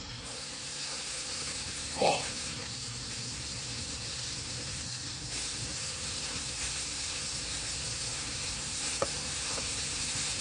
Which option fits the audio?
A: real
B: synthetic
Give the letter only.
B